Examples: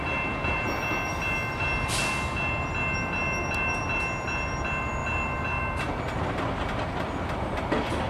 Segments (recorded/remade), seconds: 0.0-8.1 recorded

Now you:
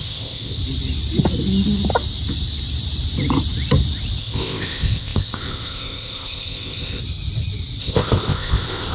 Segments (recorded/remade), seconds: 0.0-0.6 remade; 0.6-4.2 recorded; 4.2-7.0 remade; 7.0-7.8 recorded; 7.8-8.9 remade

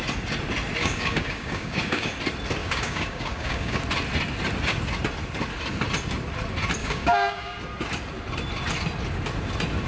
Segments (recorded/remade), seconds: 0.0-0.8 recorded; 0.8-2.1 remade; 2.1-2.6 recorded; 2.6-3.8 remade; 3.8-6.8 recorded; 6.8-7.6 remade; 7.6-9.9 recorded

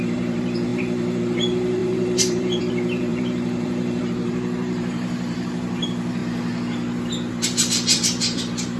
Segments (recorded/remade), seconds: 0.0-6.2 remade; 6.2-7.3 recorded; 7.3-8.8 remade

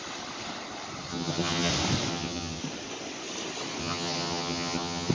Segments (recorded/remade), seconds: 0.0-1.1 recorded; 1.1-1.7 remade; 1.7-2.1 recorded; 2.1-2.6 remade; 2.6-3.8 recorded; 3.8-5.1 remade

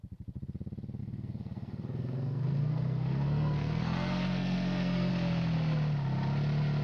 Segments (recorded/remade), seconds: 0.0-1.0 recorded; 1.0-5.1 remade; 5.1-6.8 recorded